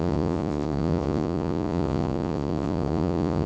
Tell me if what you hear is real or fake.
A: fake